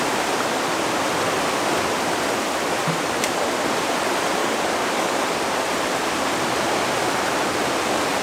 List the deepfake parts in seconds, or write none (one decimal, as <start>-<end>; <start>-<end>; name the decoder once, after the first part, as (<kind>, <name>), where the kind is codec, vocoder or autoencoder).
4.4-5.2 (codec, DAC)

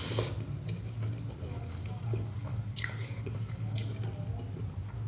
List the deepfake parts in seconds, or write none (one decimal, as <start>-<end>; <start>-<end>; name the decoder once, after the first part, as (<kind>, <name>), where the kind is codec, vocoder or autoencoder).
1.5-3.9 (codec, DAC)

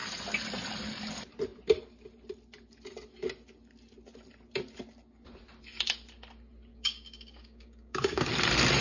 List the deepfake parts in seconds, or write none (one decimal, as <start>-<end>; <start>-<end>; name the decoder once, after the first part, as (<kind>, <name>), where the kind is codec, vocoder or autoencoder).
6.7-8.3 (codec, DAC)